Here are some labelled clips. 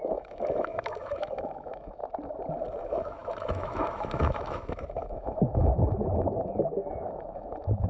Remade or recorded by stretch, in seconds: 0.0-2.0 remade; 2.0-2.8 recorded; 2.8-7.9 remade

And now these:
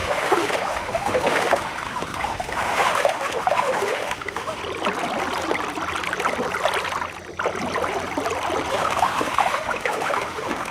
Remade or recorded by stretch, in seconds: 0.0-4.6 remade; 4.6-8.7 recorded; 8.7-10.7 remade

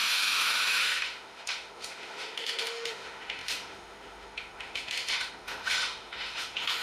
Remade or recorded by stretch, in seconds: 0.0-6.8 remade

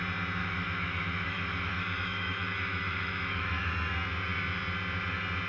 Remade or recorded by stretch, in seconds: 0.0-0.4 recorded; 0.4-3.7 remade; 3.7-5.5 recorded

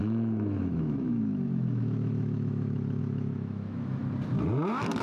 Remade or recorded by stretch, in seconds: 0.0-4.0 remade; 4.0-5.0 recorded

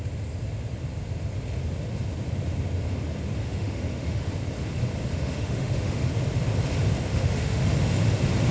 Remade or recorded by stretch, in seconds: 0.0-3.4 recorded; 3.4-4.3 remade; 4.3-5.1 recorded; 5.1-6.1 remade; 6.1-7.1 recorded; 7.1-7.7 remade; 7.7-8.5 recorded

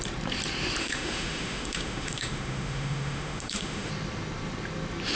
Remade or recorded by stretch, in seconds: 0.0-0.8 recorded; 0.8-3.9 remade; 3.9-5.2 recorded

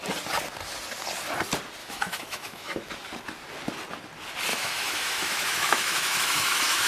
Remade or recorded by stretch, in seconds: 0.0-1.8 recorded; 1.8-2.9 remade; 2.9-4.5 recorded; 4.5-6.9 remade